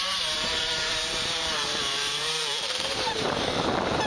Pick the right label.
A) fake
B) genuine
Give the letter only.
A